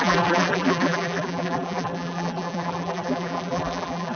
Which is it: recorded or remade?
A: remade